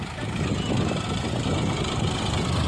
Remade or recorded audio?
recorded